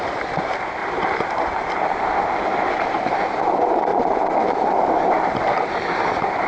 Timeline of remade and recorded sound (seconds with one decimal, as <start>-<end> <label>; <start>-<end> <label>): 0.0-0.8 recorded; 0.8-3.0 remade; 3.0-3.9 recorded; 3.9-5.1 remade; 5.1-6.5 recorded